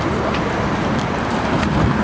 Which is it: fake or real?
real